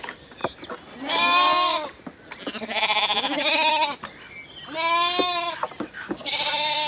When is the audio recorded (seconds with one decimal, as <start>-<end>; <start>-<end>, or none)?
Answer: 0.4-1.1; 1.7-5.8